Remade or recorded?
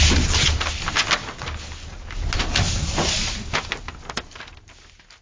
recorded